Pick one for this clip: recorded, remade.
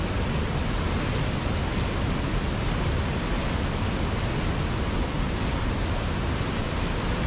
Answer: recorded